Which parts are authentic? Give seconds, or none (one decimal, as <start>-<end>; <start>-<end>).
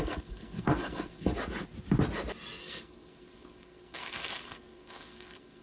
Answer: 1.3-2.6